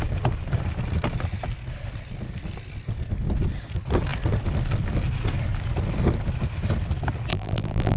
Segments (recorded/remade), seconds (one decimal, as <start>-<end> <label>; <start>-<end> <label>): 0.0-7.3 recorded; 7.3-8.0 remade